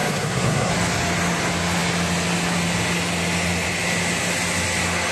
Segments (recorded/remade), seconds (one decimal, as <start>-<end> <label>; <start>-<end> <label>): 0.0-0.7 remade; 0.7-5.1 recorded